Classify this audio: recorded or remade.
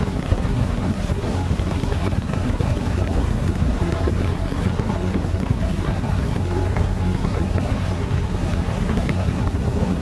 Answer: remade